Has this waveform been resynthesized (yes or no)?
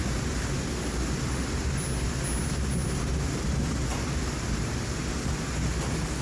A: no